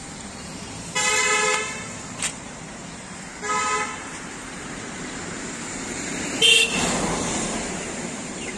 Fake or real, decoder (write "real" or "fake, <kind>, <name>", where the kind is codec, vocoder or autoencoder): fake, vocoder, BigVGAN v2